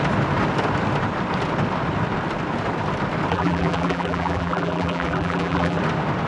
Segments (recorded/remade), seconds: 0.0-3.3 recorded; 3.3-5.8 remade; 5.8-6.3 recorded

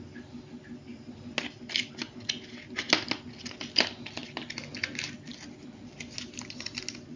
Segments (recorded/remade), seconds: 0.0-7.2 recorded

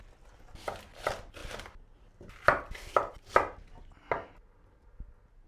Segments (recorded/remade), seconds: 0.0-5.5 recorded

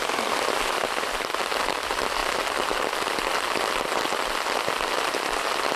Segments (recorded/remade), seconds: 0.0-5.8 recorded

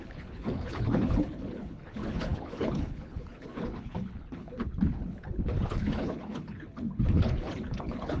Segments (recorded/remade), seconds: 0.0-8.2 remade

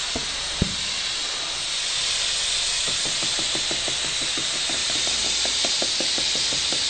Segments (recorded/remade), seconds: 0.0-6.9 recorded